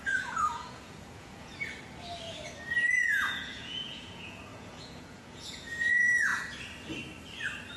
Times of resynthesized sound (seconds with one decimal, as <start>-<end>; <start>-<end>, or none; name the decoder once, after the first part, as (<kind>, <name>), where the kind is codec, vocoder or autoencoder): 0.0-1.5 (vocoder, Vocos); 3.0-6.3